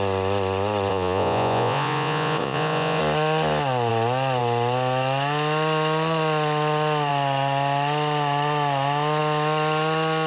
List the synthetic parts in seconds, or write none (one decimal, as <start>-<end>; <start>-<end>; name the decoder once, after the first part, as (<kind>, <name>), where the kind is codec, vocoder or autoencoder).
0.9-3.0 (vocoder, Vocos)